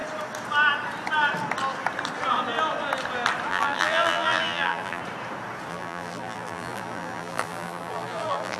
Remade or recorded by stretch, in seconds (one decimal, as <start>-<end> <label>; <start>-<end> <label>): 0.0-3.5 recorded; 3.5-5.0 remade; 5.0-5.7 recorded; 5.7-8.6 remade